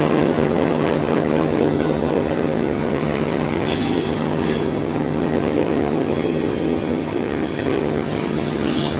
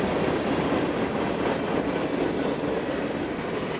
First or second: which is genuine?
second